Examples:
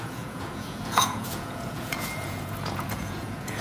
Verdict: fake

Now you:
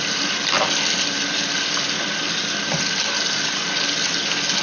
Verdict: real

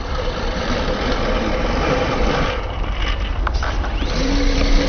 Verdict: fake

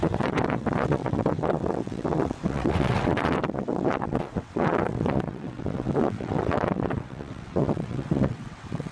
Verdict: fake